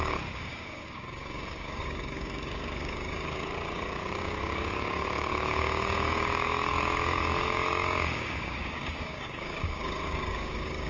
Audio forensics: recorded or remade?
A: remade